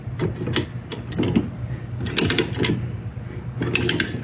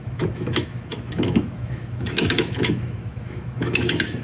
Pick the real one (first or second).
first